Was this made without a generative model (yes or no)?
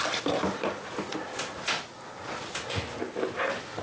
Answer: yes